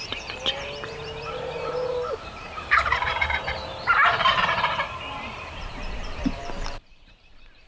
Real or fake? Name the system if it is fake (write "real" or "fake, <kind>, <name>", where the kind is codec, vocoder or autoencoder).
fake, vocoder, BigVGAN v2